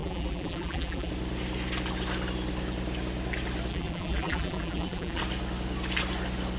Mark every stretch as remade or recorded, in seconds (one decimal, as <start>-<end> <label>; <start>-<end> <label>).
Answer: 0.0-1.1 remade; 1.1-3.7 recorded; 3.7-5.2 remade; 5.2-6.6 recorded